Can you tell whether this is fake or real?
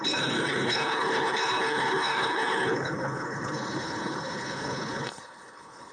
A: fake